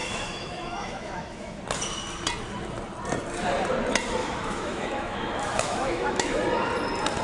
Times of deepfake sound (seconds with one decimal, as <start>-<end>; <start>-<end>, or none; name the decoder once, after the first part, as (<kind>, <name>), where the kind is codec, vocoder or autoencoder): 0.0-1.6 (autoencoder, DAC-VAE); 4.2-6.4